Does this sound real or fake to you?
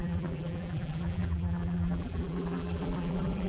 fake